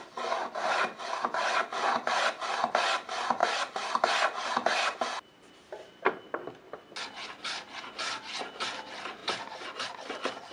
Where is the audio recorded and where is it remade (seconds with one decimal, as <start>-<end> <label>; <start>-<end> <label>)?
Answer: 0.0-3.4 recorded; 3.4-6.6 remade; 6.6-9.2 recorded; 9.2-9.9 remade; 9.9-10.5 recorded